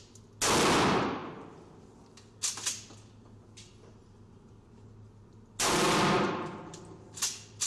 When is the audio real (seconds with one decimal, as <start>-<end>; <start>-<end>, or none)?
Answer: 0.0-7.7